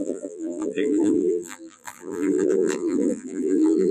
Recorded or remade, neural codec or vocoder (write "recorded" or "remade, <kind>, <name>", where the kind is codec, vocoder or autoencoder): remade, vocoder, BigVGAN v2